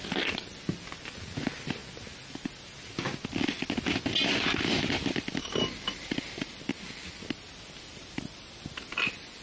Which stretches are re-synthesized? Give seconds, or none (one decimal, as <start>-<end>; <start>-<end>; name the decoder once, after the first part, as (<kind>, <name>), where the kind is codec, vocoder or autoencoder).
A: none